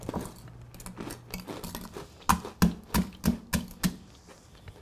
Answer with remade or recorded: recorded